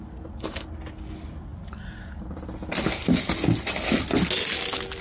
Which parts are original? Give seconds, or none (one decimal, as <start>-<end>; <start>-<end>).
0.0-5.0